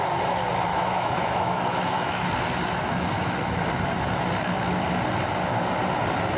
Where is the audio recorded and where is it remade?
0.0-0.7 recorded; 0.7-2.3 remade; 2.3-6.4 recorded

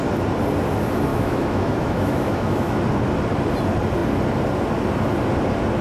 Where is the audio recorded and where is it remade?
0.0-1.1 recorded; 1.1-2.8 remade; 2.8-5.8 recorded